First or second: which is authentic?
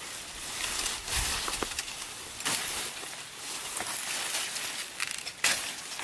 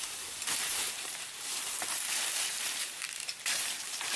first